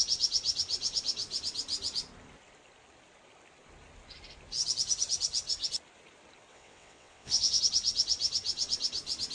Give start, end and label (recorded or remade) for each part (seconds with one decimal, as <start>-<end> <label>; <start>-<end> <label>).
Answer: 0.0-6.5 recorded; 6.5-7.6 remade; 7.6-9.3 recorded